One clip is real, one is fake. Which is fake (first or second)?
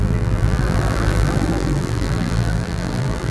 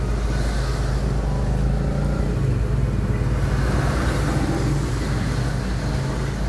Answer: first